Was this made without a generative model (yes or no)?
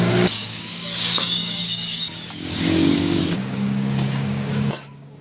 no